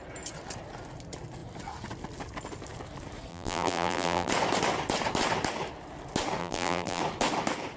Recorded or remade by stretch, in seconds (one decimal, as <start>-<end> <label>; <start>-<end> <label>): 0.0-3.3 recorded; 3.3-4.3 remade; 4.3-6.4 recorded; 6.4-7.0 remade; 7.0-7.8 recorded